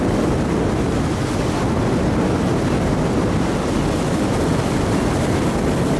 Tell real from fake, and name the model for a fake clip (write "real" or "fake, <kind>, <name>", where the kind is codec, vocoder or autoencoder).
real